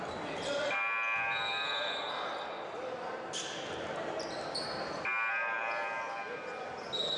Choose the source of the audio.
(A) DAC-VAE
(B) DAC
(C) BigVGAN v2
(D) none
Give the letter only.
D